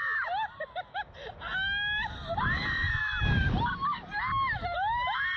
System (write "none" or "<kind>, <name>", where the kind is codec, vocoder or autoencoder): none